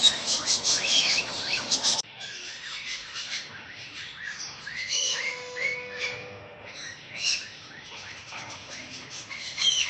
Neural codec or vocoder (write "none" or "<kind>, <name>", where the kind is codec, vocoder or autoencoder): autoencoder, DAC-VAE